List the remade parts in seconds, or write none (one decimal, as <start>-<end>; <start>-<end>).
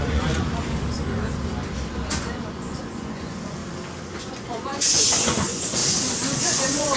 0.0-0.4; 2.5-3.6; 4.2-5.8; 6.4-7.0